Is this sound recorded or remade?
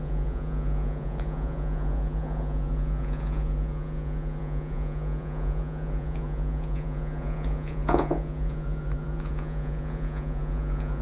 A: remade